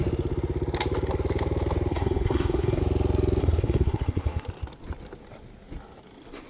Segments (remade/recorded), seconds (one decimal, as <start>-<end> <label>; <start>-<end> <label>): 0.0-1.9 recorded; 1.9-2.8 remade; 2.8-3.4 recorded; 3.4-4.5 remade; 4.5-6.5 recorded